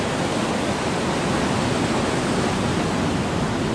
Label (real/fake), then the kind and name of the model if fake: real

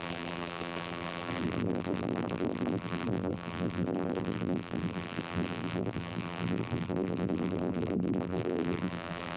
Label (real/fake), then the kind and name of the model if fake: fake, vocoder, BigVGAN v2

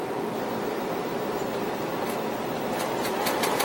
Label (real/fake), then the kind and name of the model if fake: real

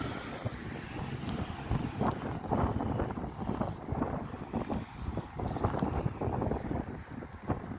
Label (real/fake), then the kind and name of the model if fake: real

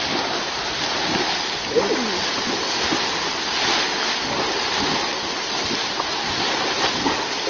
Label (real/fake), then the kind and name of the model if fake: real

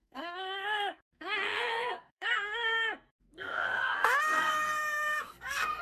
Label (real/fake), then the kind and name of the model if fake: fake, codec, SNAC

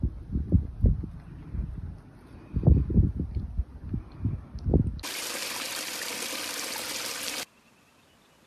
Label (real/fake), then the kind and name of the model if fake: real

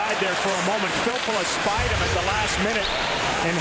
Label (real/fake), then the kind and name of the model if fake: fake, vocoder, BigVGAN v2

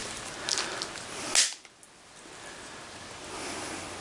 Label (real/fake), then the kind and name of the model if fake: real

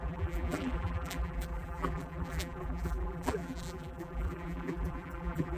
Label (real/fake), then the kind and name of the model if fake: fake, vocoder, BigVGAN v2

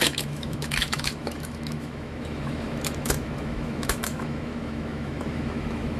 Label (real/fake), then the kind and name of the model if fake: fake, autoencoder, DAC-VAE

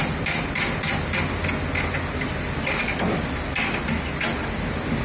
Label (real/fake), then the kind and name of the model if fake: real